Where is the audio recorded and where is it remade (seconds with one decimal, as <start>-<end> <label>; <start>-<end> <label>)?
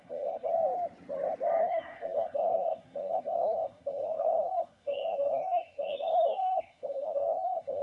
0.0-0.5 remade; 0.5-1.6 recorded; 1.6-7.8 remade